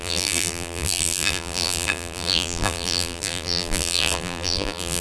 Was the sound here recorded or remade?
remade